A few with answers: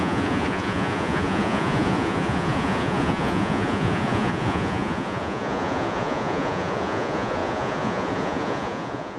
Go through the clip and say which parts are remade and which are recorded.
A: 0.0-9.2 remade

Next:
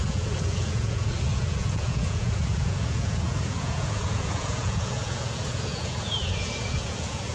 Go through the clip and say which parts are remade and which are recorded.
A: 0.0-7.3 remade

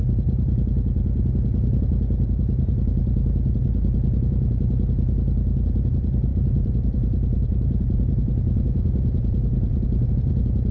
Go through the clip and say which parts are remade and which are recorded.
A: 0.0-6.3 recorded; 6.3-10.1 remade; 10.1-10.7 recorded

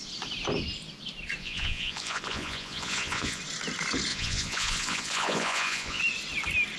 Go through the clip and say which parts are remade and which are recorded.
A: 0.0-1.4 recorded; 1.4-3.4 remade; 3.4-4.1 recorded; 4.1-6.0 remade; 6.0-6.8 recorded